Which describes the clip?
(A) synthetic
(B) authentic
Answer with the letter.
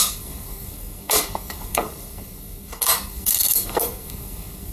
A